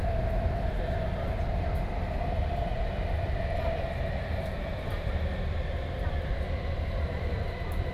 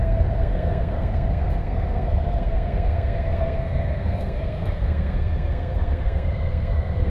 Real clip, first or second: first